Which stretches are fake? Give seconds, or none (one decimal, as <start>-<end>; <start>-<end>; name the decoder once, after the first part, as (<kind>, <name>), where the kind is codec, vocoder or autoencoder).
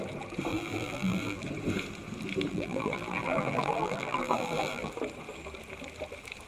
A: 0.5-1.4 (vocoder, BigVGAN v2); 2.5-4.9